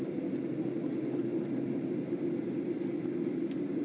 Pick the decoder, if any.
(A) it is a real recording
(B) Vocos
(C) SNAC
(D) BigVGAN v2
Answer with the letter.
A